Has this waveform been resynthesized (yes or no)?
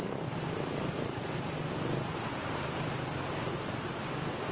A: no